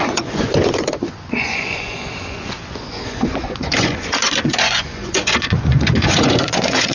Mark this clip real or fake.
fake